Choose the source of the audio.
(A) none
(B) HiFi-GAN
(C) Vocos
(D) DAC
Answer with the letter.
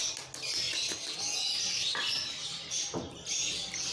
A